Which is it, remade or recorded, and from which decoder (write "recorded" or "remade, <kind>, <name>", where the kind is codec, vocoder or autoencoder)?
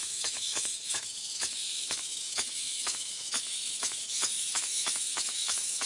remade, autoencoder, DAC-VAE